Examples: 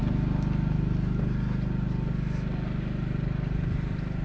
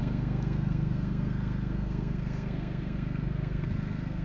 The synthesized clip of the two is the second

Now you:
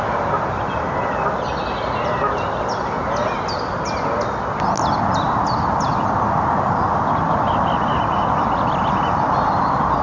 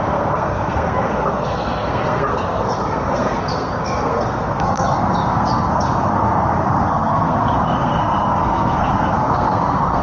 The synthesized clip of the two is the second